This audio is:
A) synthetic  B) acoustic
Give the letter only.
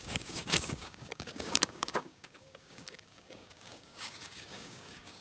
A